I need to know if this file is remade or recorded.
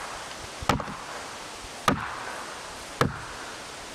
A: recorded